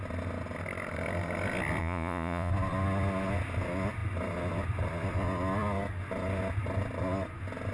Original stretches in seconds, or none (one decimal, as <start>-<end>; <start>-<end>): 0.0-1.8; 2.5-7.7